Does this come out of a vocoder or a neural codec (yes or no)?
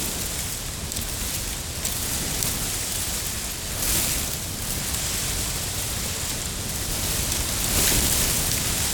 no